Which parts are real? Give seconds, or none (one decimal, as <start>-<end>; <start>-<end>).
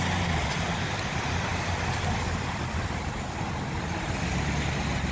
0.0-5.1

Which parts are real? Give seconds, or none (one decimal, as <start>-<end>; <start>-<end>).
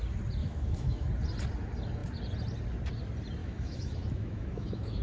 0.0-0.4; 1.1-3.4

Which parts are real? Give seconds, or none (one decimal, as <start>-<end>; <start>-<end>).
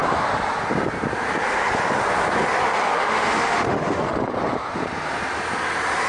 0.0-2.9; 4.0-6.1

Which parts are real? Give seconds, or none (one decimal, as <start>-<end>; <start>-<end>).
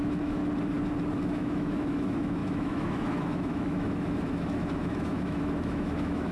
0.4-1.1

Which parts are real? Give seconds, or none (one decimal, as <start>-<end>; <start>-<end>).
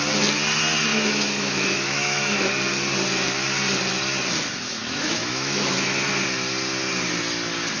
0.0-0.9; 2.5-4.8; 6.1-7.8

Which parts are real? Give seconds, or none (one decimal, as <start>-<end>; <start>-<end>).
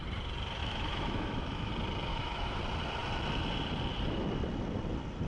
0.0-0.6; 1.7-2.1; 2.6-5.3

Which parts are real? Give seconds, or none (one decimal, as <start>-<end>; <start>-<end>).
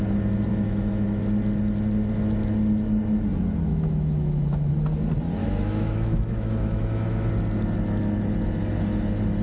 0.0-0.5; 1.2-3.7; 4.7-5.4; 7.3-9.4